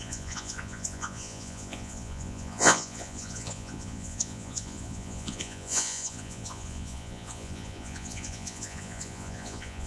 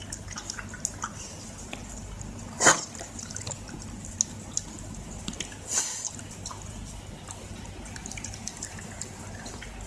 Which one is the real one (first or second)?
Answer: second